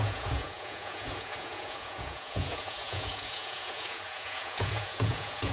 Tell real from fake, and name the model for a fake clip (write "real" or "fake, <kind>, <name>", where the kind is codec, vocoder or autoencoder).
fake, vocoder, Vocos